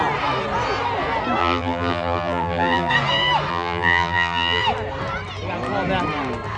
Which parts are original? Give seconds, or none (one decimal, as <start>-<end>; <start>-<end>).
0.0-1.4; 2.9-3.5; 4.6-6.6